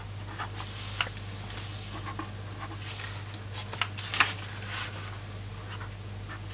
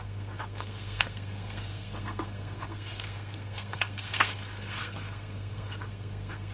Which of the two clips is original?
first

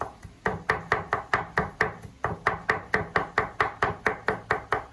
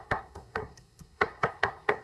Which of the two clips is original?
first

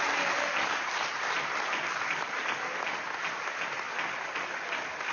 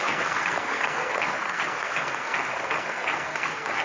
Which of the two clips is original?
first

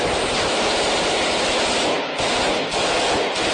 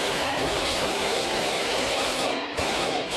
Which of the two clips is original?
first